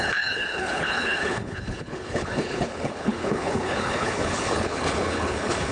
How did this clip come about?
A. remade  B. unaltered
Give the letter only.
A